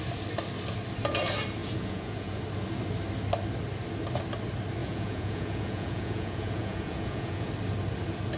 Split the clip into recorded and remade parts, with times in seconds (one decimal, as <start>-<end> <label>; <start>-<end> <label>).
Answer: 0.0-1.6 recorded; 1.6-2.4 remade; 2.4-4.8 recorded; 4.8-7.5 remade; 7.5-8.4 recorded